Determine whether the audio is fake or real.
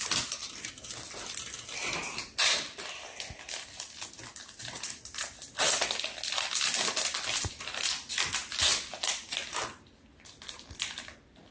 real